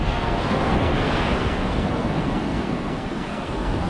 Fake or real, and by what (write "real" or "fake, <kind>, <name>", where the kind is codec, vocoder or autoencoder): fake, codec, SNAC